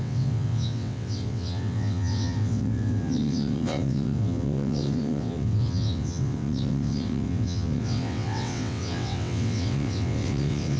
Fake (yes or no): yes